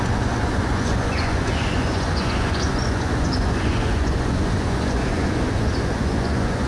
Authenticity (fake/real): fake